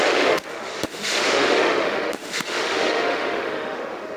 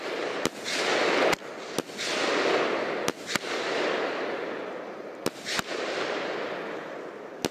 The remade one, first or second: first